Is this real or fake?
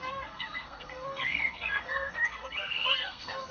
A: fake